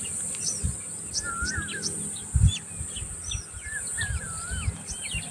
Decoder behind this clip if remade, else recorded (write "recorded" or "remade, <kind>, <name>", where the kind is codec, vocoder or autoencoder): recorded